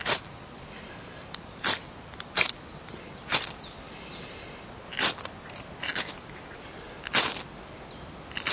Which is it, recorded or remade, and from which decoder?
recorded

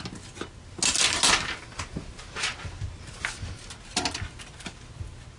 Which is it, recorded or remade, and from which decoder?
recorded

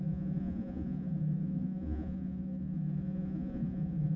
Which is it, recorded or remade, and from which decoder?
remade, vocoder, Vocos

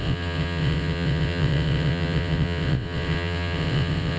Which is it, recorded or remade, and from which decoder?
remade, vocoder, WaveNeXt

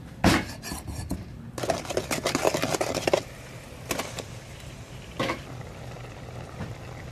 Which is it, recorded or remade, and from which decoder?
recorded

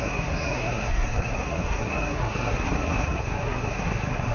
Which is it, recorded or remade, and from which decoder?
remade, codec, SNAC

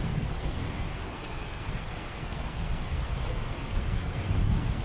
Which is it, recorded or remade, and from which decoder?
remade, codec, SNAC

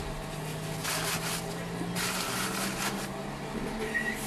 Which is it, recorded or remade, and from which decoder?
recorded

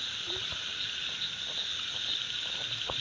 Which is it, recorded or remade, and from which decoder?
recorded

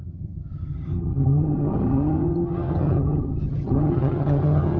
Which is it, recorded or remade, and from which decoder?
remade, vocoder, HiFi-GAN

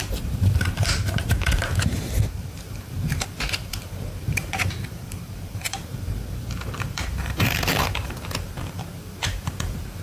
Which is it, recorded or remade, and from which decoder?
remade, vocoder, BigVGAN v2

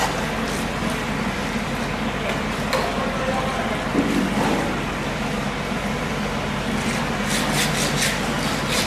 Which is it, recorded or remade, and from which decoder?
recorded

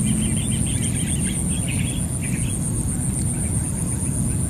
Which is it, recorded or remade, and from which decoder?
recorded